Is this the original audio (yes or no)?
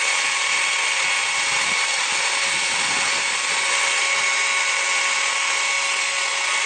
yes